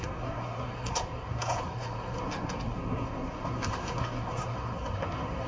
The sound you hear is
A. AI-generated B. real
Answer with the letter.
A